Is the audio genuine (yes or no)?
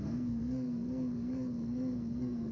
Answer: no